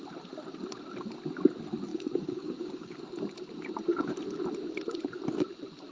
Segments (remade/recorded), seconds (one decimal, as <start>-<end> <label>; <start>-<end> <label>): 0.0-1.9 recorded; 1.9-3.0 remade; 3.0-5.9 recorded